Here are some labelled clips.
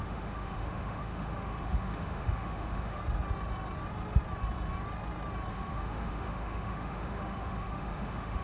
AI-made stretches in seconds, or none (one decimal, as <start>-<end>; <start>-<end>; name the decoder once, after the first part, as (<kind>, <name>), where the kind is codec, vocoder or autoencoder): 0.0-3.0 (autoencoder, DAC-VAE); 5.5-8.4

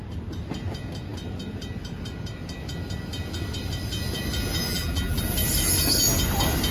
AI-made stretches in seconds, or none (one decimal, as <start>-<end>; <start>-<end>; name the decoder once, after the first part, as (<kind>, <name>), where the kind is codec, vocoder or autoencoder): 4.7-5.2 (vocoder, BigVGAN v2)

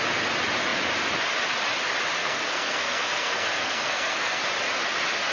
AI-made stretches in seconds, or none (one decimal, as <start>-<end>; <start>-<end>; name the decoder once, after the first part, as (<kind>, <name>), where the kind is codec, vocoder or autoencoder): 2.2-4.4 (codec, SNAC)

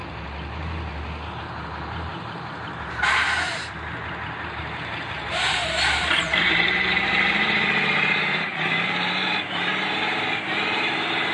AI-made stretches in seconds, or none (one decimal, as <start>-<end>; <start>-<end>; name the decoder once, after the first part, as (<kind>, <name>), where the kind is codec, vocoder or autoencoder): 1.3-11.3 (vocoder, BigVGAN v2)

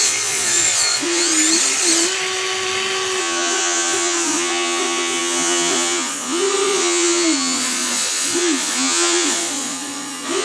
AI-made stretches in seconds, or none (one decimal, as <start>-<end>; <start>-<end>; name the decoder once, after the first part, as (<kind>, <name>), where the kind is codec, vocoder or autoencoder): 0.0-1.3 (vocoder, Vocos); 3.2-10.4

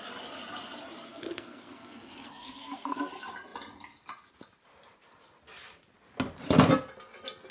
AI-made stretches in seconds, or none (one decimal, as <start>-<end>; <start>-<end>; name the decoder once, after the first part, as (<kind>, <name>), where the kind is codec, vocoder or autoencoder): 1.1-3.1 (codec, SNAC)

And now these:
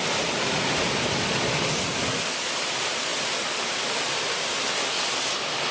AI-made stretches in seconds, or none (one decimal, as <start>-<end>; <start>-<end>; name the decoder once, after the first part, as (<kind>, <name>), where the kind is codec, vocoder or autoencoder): none